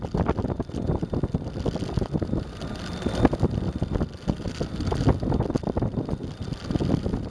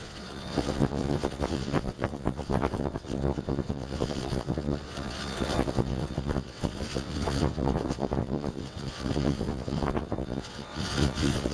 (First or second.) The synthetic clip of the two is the second